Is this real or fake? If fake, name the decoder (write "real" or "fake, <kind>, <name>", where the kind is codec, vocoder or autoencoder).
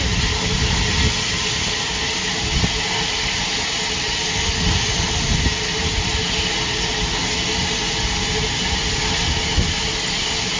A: real